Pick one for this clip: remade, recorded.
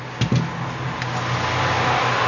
recorded